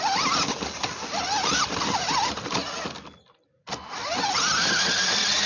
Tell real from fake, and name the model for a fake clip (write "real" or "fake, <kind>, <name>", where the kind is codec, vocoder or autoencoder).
real